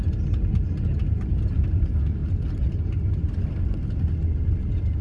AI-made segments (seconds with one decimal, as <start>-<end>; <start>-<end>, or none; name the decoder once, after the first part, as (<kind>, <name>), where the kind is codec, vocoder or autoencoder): none